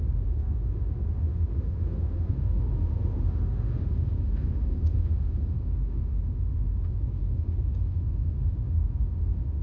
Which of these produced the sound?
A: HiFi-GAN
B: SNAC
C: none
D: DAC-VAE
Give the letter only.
D